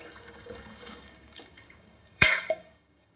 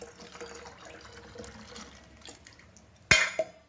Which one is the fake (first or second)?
first